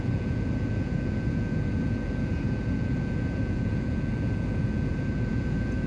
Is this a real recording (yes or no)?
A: no